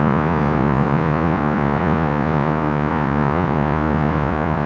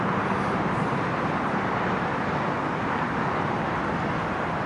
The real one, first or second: second